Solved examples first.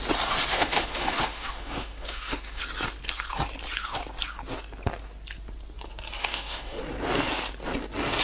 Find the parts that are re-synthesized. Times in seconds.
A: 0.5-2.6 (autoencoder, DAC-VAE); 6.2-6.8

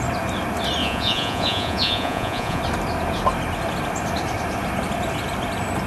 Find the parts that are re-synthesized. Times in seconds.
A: 0.8-2.6 (vocoder, Vocos)

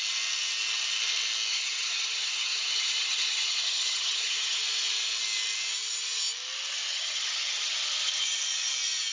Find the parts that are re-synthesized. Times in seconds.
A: 1.5-4.6 (vocoder, HiFi-GAN); 6.9-7.7

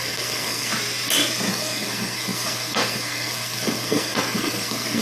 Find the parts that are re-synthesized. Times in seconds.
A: 0.0-0.7 (codec, SNAC); 1.5-5.0

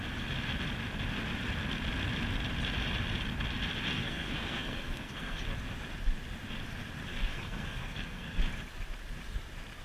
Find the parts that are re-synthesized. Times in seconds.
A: 4.0-5.4 (codec, SNAC); 7.1-8.4

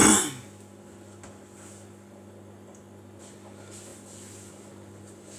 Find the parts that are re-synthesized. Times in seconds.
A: none

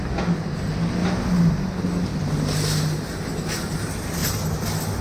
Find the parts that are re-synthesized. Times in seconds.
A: none

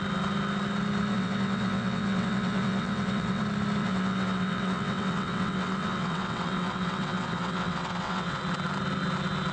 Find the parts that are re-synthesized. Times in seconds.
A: 1.1-3.4 (vocoder, WaveNeXt); 3.8-8.4